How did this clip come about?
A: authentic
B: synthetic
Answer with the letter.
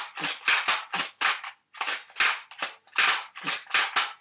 A